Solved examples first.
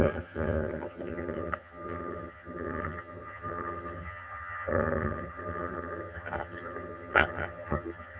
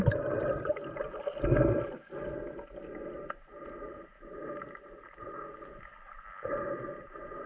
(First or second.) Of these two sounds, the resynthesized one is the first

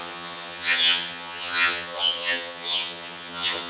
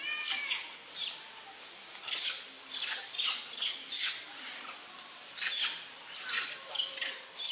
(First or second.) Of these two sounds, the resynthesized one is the first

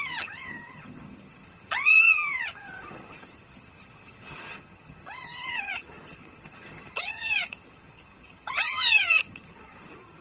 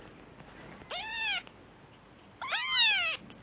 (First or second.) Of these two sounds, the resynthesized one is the first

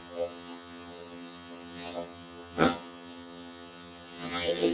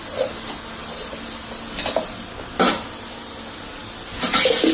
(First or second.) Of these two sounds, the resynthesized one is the first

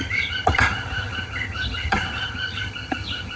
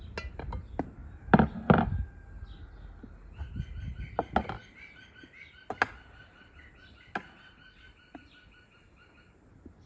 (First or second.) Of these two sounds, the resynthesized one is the first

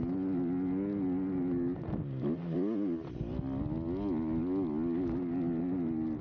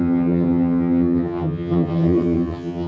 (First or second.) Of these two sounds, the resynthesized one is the second